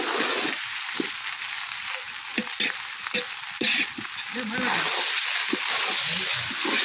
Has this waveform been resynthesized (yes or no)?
no